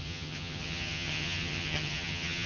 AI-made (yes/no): yes